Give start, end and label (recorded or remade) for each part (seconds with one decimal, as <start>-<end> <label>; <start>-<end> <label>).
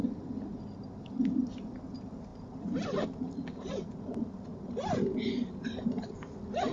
0.0-6.7 recorded